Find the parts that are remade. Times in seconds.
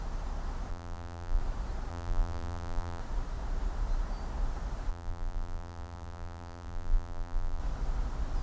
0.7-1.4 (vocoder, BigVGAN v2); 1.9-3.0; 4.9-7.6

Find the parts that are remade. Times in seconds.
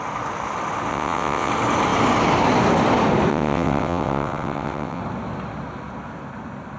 0.9-1.5 (vocoder, WaveNeXt); 3.3-5.0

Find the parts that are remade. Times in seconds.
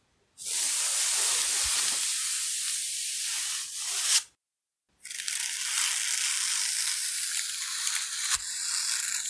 none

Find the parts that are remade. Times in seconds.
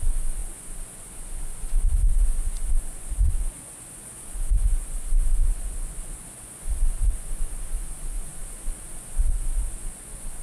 0.0-10.4 (vocoder, Vocos)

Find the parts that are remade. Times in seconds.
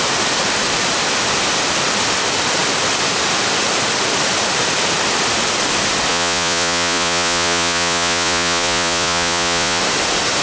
6.1-9.8 (vocoder, Vocos)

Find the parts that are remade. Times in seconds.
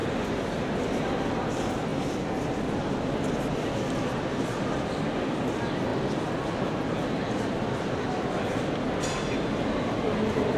none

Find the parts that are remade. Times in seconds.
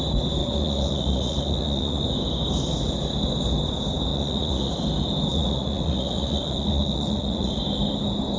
0.4-2.0 (vocoder, Vocos); 4.1-4.7; 5.3-7.6